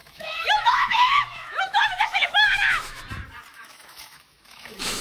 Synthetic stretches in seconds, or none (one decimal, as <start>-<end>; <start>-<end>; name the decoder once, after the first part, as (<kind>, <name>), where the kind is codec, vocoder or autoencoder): 0.0-3.0 (autoencoder, DAC-VAE); 3.5-5.0